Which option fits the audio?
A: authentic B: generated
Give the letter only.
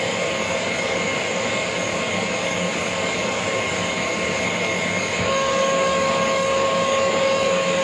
B